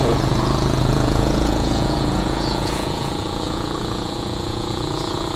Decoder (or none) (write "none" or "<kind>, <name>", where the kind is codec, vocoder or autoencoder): vocoder, Vocos